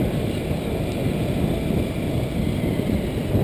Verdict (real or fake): real